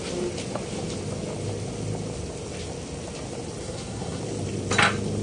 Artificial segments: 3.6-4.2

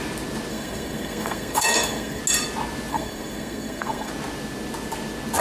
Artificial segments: 0.5-2.2; 2.9-4.1

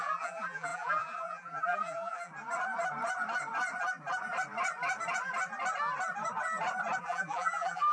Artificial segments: 0.0-2.3; 7.0-7.9

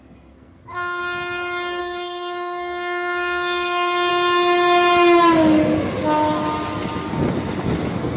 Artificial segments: 0.0-1.0; 1.8-4.1

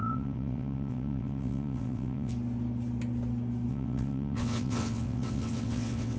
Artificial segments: 0.0-2.3; 3.7-6.2

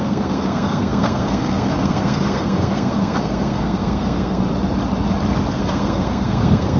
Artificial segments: 0.0-4.4; 5.5-6.8